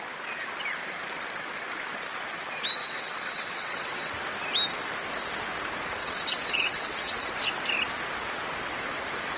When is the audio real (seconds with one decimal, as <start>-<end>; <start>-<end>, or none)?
0.0-2.8; 4.1-6.0; 7.3-9.4